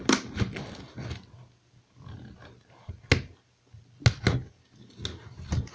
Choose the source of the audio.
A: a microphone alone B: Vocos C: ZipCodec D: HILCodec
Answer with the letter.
A